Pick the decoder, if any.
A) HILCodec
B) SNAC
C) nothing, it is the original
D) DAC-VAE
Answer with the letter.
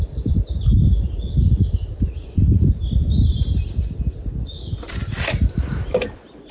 C